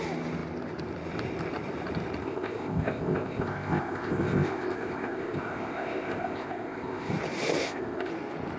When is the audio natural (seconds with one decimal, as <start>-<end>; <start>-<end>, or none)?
0.0-2.2; 7.1-7.6; 8.1-8.6

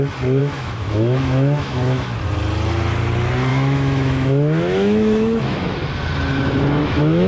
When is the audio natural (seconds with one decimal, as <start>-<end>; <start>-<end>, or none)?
0.0-0.4; 2.2-3.5; 5.7-6.8

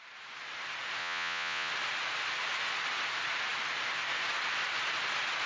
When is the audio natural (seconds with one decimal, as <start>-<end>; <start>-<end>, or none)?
0.0-1.0; 1.7-5.5